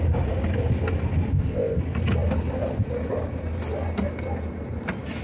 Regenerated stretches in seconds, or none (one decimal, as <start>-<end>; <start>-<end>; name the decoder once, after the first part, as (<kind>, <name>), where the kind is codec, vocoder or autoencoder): 1.3-1.8 (codec, ZipCodec)

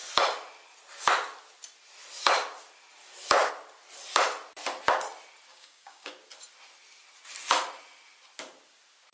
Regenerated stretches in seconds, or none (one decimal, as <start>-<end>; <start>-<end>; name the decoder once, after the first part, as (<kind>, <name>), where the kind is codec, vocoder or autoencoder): 5.5-6.1 (codec, DAC)

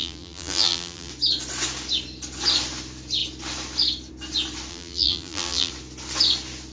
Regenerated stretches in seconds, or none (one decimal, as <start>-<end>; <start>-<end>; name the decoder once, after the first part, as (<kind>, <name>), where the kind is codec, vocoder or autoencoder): 0.0-1.1 (vocoder, BigVGAN v2); 4.7-5.7

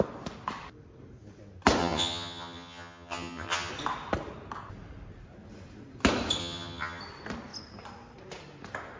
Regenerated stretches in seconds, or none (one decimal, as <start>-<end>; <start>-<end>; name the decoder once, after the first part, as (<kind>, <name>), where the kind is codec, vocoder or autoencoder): 1.8-3.7 (vocoder, HiFi-GAN); 6.4-7.0

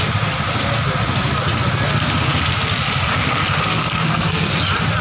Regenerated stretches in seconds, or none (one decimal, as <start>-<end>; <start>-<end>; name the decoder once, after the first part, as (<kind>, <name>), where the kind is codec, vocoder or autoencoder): 3.8-4.5 (codec, SNAC)

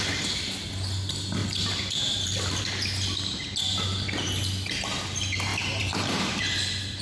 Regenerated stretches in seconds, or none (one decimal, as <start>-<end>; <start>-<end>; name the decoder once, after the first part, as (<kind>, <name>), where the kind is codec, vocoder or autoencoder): 1.4-2.6 (vocoder, BigVGAN v2); 5.5-6.4

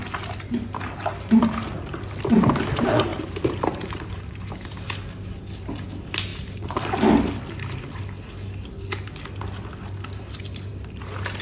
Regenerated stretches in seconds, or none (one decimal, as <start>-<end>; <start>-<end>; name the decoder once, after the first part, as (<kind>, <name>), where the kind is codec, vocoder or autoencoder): 3.1-4.8 (vocoder, BigVGAN v2); 6.3-6.9